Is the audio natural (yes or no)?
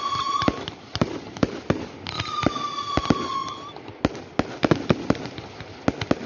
yes